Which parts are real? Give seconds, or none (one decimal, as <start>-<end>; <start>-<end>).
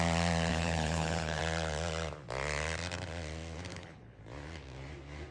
0.0-0.5; 1.4-3.7; 4.2-5.3